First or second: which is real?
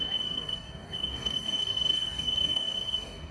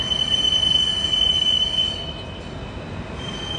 second